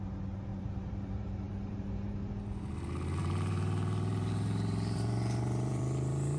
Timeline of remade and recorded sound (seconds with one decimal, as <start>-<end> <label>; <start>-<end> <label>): 0.0-0.5 recorded; 0.5-2.3 remade; 2.3-3.2 recorded; 3.2-6.4 remade